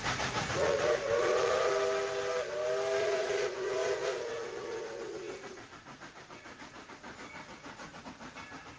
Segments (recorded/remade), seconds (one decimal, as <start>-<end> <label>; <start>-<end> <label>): 0.0-1.7 remade; 1.7-3.0 recorded; 3.0-8.0 remade; 8.0-8.8 recorded

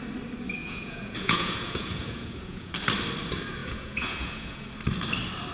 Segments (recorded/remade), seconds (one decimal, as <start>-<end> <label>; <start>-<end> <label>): 0.0-0.6 recorded; 0.6-2.7 remade; 2.7-3.6 recorded; 3.6-4.7 remade; 4.7-5.5 recorded

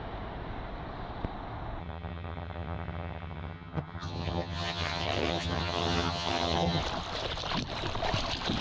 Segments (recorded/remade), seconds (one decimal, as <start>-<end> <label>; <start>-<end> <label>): 0.0-1.8 recorded; 1.8-6.8 remade; 6.8-8.6 recorded

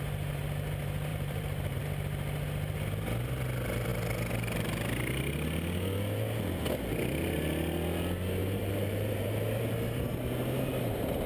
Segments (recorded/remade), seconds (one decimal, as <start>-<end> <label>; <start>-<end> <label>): 0.0-1.1 recorded; 1.1-1.8 remade; 1.8-8.4 recorded; 8.4-11.3 remade

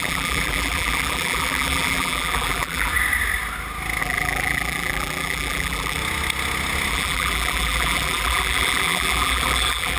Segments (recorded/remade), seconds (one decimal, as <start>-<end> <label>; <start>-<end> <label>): 0.0-2.9 remade; 2.9-4.0 recorded; 4.0-6.0 remade; 6.0-6.9 recorded; 6.9-10.0 remade

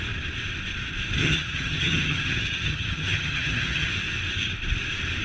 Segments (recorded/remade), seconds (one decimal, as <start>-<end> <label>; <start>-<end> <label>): 0.0-1.2 recorded; 1.2-3.9 remade; 3.9-5.2 recorded

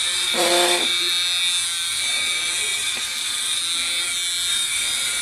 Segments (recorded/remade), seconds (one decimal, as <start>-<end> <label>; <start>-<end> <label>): 0.0-0.9 remade; 0.9-1.9 recorded; 1.9-3.6 remade; 3.6-4.5 recorded; 4.5-5.2 remade

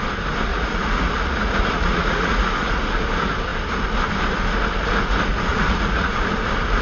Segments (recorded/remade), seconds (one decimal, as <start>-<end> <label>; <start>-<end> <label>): 0.0-0.5 recorded; 0.5-2.7 remade; 2.7-5.5 recorded; 5.5-6.3 remade; 6.3-6.8 recorded